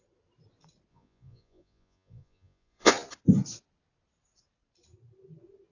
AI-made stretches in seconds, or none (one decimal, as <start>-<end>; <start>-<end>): 0.9-2.9